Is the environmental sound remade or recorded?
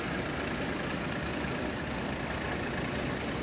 recorded